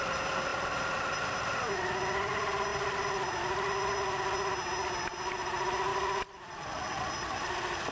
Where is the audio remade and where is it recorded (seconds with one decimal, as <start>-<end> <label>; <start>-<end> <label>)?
0.0-7.9 recorded